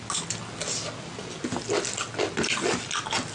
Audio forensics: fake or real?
real